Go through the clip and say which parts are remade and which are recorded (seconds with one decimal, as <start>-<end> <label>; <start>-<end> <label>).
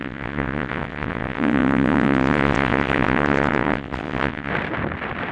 0.0-4.5 remade; 4.5-5.3 recorded